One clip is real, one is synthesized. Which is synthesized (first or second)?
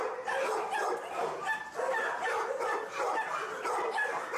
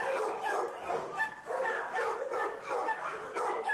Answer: second